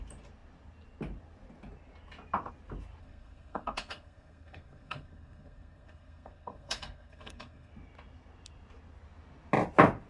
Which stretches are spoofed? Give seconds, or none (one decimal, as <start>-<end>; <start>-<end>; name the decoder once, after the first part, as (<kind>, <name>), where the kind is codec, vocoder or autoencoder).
3.0-7.7 (codec, SNAC)